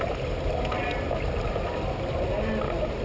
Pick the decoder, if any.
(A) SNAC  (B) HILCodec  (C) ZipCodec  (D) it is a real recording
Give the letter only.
D